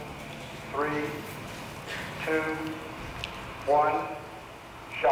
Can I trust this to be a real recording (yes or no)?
yes